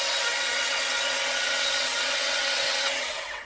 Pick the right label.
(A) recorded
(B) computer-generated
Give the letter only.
B